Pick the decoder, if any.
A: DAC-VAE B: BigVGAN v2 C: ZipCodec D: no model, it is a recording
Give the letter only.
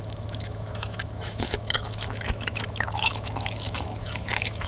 A